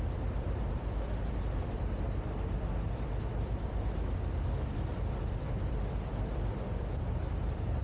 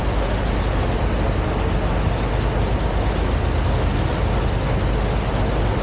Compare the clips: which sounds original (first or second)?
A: second